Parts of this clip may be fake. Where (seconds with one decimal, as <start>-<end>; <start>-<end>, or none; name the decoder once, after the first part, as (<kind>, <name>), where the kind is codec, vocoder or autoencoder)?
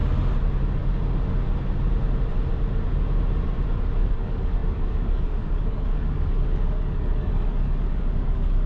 4.1-8.7 (codec, DAC)